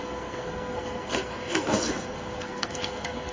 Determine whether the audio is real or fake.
fake